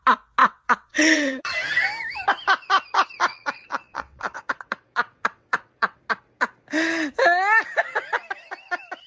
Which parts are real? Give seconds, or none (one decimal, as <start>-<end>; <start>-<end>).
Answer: 0.0-0.4; 1.5-3.3; 6.0-9.1